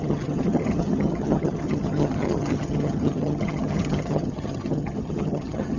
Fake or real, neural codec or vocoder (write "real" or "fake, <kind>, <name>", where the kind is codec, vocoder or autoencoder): fake, vocoder, HiFi-GAN